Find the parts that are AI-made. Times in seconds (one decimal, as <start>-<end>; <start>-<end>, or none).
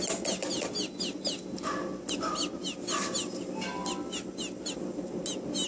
none